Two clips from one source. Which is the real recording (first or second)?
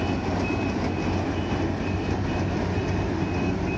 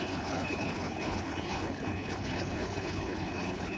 first